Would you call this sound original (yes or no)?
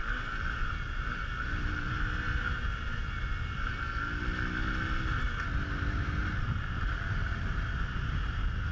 yes